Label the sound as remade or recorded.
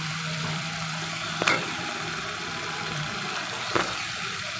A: remade